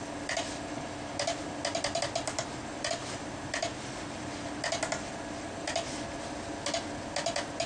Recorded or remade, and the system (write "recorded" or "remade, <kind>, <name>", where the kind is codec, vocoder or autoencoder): recorded